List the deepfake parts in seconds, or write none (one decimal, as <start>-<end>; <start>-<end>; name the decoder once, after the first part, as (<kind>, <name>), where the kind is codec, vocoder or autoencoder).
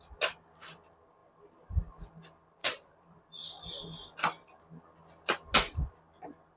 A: 1.2-1.8 (vocoder, BigVGAN v2); 2.6-3.3